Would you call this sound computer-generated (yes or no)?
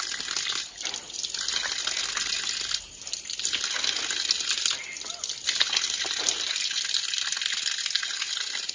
no